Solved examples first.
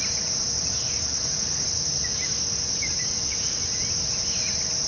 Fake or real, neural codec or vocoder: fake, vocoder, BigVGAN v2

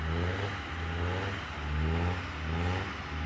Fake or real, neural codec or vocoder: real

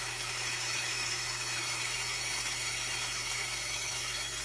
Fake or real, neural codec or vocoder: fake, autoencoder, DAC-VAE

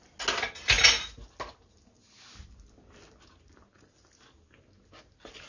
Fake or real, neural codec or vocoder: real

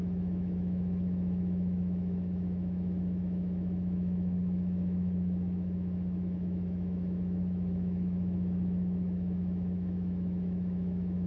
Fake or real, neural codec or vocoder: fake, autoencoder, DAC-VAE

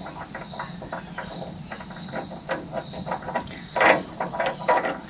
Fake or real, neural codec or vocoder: real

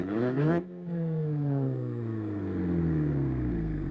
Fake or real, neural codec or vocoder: fake, codec, SNAC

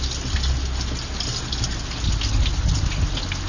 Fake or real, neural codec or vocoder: real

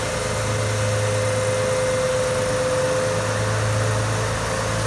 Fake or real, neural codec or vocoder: real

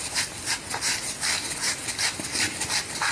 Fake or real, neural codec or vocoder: real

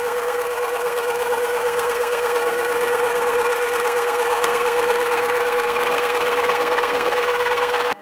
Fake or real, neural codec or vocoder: fake, codec, SNAC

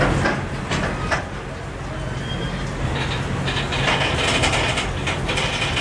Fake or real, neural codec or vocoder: real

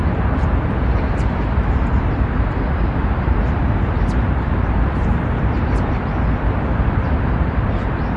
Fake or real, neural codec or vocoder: fake, vocoder, BigVGAN v2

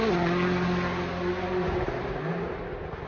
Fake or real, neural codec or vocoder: real